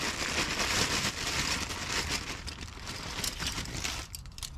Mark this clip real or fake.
real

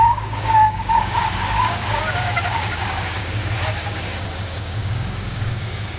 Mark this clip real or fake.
fake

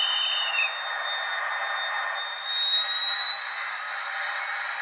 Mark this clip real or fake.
real